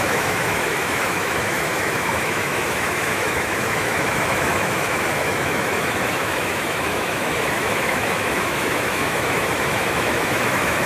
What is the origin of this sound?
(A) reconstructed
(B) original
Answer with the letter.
A